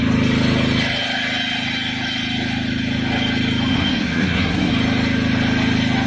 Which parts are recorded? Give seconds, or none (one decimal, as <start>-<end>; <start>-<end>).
0.0-3.7; 4.7-6.1